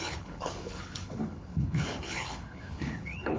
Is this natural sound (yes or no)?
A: no